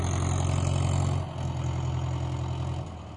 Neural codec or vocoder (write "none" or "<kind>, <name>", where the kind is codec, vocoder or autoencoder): none